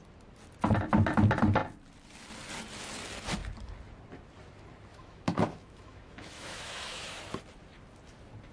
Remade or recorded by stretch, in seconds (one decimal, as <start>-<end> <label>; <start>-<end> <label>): 0.0-4.9 recorded; 4.9-7.2 remade; 7.2-8.5 recorded